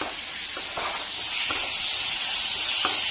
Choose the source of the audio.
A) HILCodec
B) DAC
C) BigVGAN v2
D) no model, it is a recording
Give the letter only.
D